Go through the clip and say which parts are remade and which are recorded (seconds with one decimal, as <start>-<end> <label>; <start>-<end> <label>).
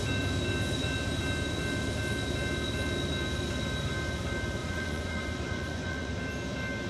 0.0-4.6 recorded; 4.6-6.1 remade; 6.1-6.9 recorded